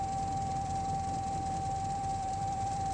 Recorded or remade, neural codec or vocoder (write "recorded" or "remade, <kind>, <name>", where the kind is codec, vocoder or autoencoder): remade, vocoder, BigVGAN v2